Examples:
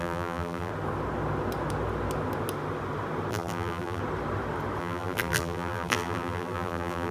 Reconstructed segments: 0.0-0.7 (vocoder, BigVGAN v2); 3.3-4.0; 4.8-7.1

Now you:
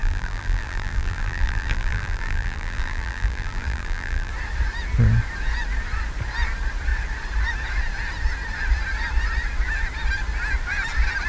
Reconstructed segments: 0.0-4.3 (vocoder, BigVGAN v2)

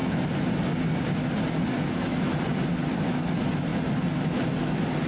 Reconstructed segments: none

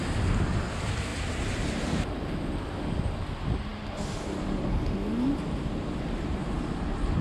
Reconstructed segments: 1.1-2.4 (vocoder, BigVGAN v2); 6.4-7.2